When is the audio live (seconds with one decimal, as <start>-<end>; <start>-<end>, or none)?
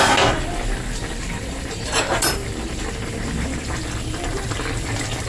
0.0-5.3